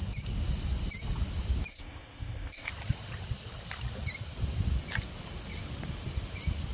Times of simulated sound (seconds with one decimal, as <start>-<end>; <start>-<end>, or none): 1.7-2.7